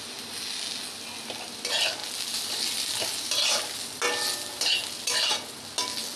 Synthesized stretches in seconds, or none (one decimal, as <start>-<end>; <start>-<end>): none